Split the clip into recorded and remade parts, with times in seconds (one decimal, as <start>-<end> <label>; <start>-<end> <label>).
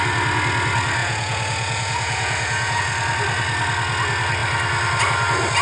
0.0-1.0 recorded; 1.0-2.8 remade; 2.8-5.6 recorded